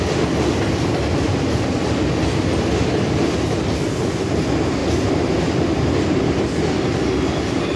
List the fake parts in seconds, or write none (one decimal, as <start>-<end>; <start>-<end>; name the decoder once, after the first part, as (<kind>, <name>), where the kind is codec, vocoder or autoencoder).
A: 4.8-6.4 (vocoder, BigVGAN v2)